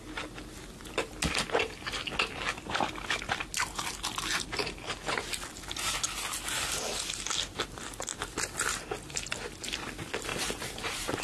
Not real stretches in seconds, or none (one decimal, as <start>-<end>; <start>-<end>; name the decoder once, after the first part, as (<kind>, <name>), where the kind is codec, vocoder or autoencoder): 10.3-11.2 (vocoder, BigVGAN v2)